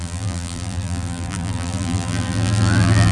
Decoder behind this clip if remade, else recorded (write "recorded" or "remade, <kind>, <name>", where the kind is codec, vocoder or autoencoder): remade, vocoder, BigVGAN v2